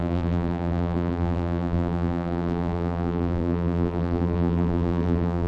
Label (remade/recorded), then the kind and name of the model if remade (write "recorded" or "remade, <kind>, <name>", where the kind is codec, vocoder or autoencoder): remade, vocoder, BigVGAN v2